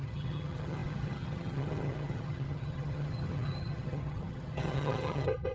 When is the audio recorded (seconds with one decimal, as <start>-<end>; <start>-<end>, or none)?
none